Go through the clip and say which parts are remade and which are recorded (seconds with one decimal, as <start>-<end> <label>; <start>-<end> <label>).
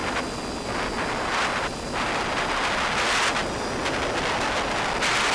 0.0-5.3 recorded